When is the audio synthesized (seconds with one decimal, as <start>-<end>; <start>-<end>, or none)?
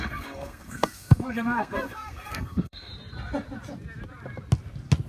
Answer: 0.0-2.9